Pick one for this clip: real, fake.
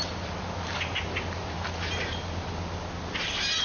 real